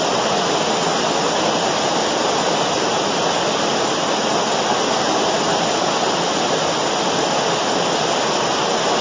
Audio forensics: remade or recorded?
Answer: recorded